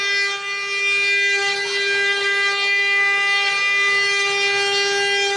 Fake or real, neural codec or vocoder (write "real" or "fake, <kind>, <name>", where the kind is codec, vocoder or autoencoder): real